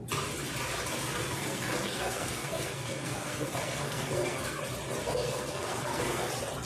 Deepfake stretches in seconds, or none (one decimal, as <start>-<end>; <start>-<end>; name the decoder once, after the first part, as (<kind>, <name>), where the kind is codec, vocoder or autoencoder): 1.2-4.6 (codec, SNAC); 5.0-6.3